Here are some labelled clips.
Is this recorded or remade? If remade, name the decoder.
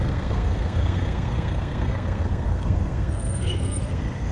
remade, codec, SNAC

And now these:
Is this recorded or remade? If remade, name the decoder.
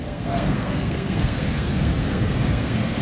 remade, codec, SNAC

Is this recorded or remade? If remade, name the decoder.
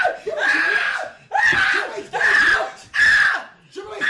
recorded